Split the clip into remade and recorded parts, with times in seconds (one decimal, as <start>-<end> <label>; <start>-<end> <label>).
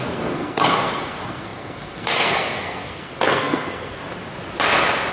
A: 0.0-4.0 remade; 4.0-5.1 recorded